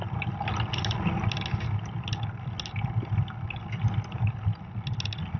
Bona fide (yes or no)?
yes